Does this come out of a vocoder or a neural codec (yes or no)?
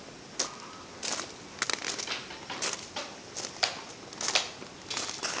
no